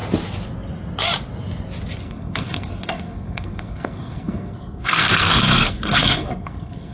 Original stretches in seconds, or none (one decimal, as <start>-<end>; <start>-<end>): 0.0-2.0